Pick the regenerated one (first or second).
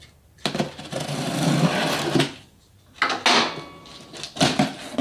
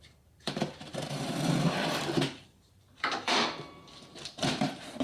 second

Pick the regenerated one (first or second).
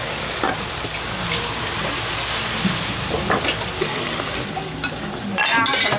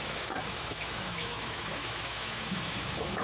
second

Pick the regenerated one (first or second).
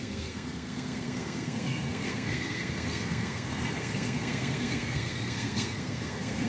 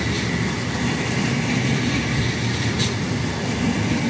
first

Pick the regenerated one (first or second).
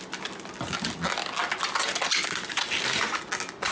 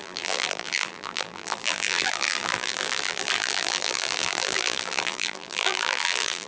second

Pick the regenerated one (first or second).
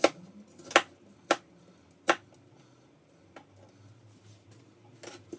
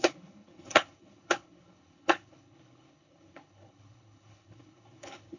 second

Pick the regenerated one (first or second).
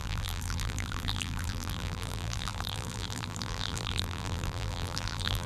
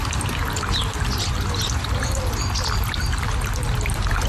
first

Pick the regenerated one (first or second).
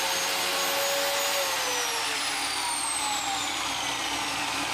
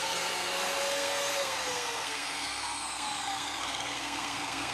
second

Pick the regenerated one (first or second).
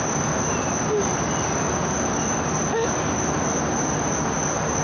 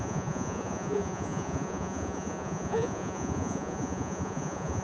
second